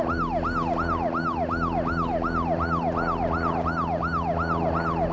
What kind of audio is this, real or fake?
real